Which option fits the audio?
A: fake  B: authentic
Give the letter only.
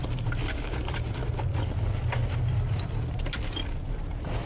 B